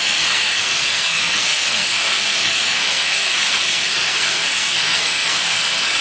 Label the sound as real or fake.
fake